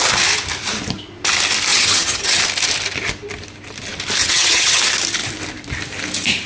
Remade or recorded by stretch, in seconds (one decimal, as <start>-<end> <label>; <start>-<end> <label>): 0.0-1.7 recorded; 1.7-2.4 remade; 2.4-4.2 recorded; 4.2-4.8 remade; 4.8-6.5 recorded